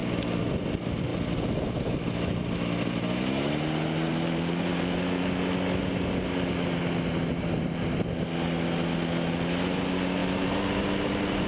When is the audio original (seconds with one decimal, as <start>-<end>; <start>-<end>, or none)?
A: 0.0-4.1; 5.4-10.2